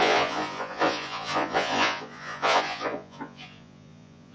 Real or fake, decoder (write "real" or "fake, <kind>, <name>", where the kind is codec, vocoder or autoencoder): fake, vocoder, Vocos